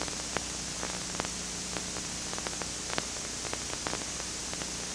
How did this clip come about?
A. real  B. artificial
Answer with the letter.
A